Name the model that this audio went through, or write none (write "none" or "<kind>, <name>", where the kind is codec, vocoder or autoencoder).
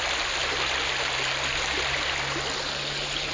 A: none